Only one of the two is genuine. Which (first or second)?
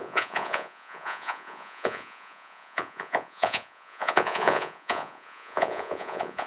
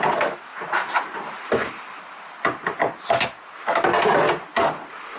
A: second